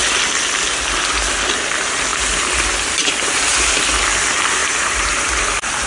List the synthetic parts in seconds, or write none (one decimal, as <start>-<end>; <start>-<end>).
2.1-3.7; 4.6-5.9